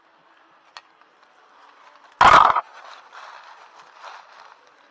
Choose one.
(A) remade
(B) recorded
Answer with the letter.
B